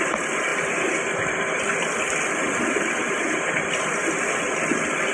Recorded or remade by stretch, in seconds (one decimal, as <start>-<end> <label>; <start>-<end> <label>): 0.0-5.1 recorded